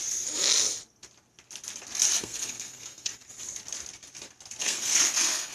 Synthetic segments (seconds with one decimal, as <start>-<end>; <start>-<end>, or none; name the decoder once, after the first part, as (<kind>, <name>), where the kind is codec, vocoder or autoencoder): 2.2-3.1 (codec, SNAC); 4.6-5.5